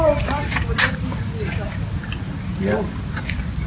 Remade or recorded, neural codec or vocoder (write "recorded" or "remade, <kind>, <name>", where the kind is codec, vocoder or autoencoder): recorded